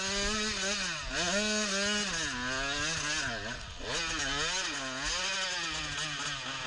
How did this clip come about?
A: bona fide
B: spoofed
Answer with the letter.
A